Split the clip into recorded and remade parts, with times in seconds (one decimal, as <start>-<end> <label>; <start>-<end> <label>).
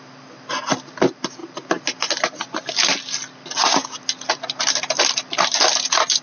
0.0-6.2 recorded